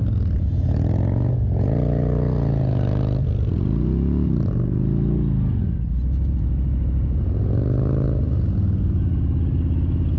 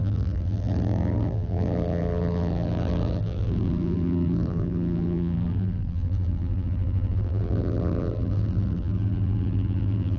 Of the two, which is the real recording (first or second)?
first